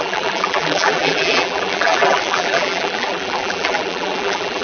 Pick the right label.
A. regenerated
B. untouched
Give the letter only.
A